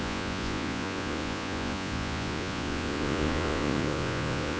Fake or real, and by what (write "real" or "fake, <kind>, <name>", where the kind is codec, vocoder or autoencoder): fake, vocoder, Vocos